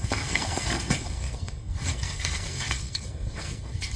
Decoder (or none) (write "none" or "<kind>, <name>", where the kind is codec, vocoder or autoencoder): codec, SNAC